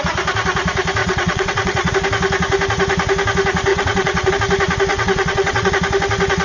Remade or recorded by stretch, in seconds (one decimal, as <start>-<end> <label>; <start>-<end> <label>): 0.0-1.0 recorded; 1.0-1.9 remade; 1.9-3.7 recorded; 3.7-4.3 remade; 4.3-4.9 recorded; 4.9-5.7 remade; 5.7-6.4 recorded